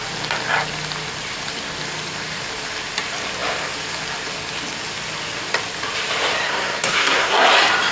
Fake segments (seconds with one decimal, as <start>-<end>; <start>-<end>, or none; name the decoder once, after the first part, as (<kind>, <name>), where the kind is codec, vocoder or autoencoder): 6.4-7.5 (codec, SNAC)